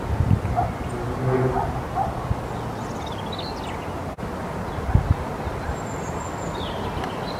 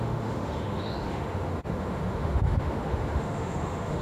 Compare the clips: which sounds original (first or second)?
first